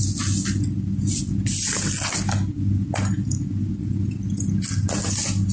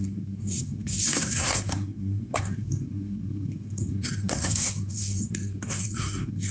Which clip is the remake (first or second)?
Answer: second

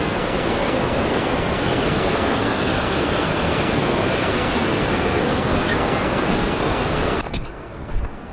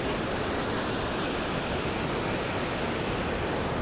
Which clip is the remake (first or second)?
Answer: first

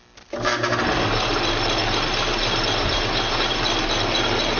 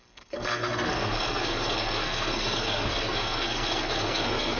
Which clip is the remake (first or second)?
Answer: second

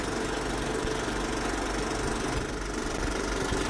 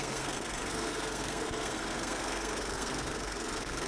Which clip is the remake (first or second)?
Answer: second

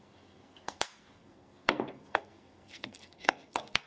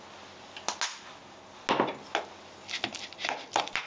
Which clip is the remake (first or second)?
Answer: first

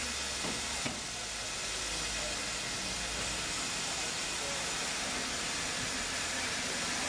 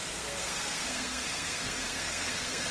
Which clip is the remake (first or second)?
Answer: second